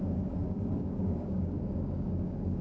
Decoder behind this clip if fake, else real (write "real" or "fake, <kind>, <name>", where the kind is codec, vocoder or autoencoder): fake, codec, DAC